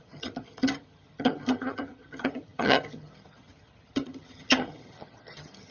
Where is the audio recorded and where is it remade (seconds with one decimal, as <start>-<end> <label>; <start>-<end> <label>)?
0.0-5.7 remade